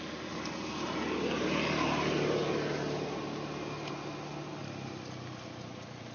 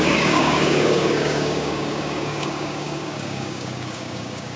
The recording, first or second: first